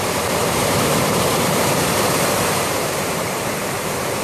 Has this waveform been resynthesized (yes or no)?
yes